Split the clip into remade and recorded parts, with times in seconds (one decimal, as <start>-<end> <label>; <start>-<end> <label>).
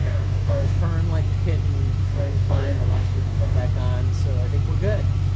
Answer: 0.0-0.8 remade; 0.8-2.0 recorded; 2.0-3.6 remade; 3.6-5.4 recorded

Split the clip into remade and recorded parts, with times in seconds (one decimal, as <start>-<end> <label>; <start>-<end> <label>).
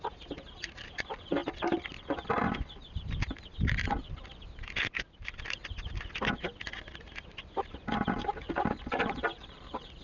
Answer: 0.0-10.0 remade